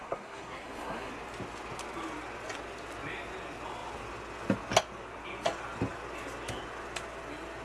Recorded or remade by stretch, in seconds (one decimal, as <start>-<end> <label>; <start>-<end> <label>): 0.0-1.1 remade; 1.1-7.6 recorded